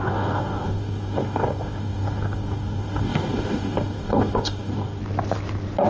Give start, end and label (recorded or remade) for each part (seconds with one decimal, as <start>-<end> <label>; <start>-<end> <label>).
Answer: 0.0-5.0 remade; 5.0-5.9 recorded